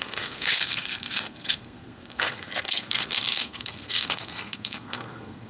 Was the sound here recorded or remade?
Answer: remade